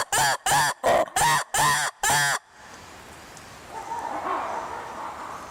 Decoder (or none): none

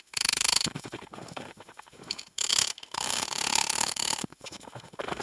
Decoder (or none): autoencoder, DAC-VAE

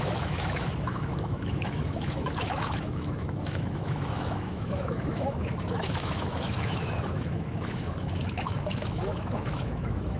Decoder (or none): autoencoder, DAC-VAE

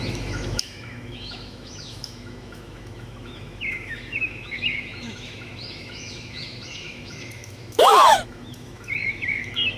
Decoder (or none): autoencoder, DAC-VAE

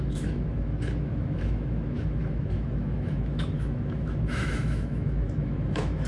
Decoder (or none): autoencoder, DAC-VAE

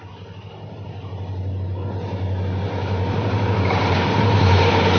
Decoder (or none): none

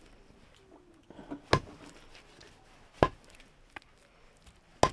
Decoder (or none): none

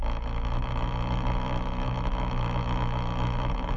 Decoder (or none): autoencoder, DAC-VAE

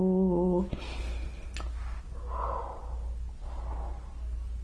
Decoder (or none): none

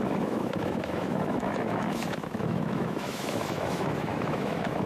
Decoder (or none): autoencoder, DAC-VAE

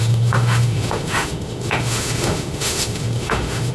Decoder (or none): autoencoder, DAC-VAE